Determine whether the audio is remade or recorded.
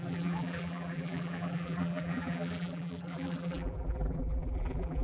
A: remade